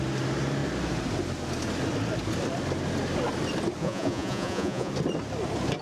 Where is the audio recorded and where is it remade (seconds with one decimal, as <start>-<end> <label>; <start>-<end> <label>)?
0.0-3.8 recorded; 3.8-4.9 remade; 4.9-5.8 recorded